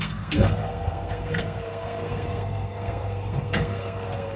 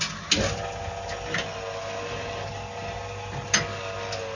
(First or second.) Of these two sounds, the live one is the second